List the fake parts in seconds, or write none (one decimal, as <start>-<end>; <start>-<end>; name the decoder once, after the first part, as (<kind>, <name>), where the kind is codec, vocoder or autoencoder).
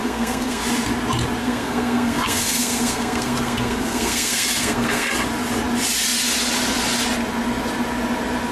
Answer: 0.0-0.6 (codec, SNAC); 1.4-5.1